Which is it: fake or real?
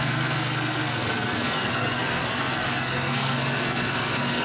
fake